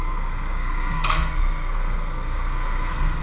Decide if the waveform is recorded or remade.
remade